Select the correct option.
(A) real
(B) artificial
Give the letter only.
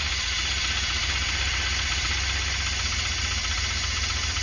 A